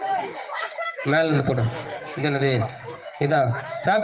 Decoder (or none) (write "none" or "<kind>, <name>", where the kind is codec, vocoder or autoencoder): codec, DAC